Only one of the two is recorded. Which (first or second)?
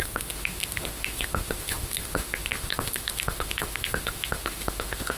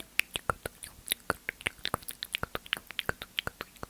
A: second